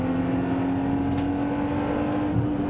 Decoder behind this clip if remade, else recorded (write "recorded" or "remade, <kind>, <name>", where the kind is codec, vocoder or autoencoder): recorded